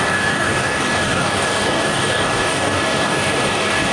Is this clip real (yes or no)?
no